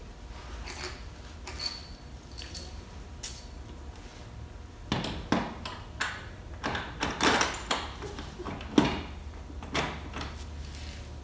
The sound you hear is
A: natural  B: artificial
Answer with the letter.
A